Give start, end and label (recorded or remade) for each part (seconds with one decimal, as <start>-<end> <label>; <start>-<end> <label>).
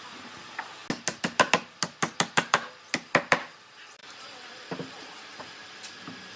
0.0-4.0 recorded; 4.0-6.4 remade